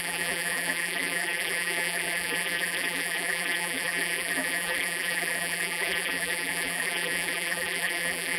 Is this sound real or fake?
fake